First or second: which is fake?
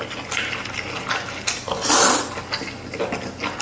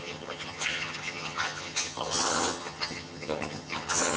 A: second